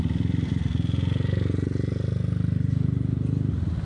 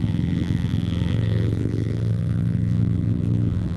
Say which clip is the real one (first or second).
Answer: first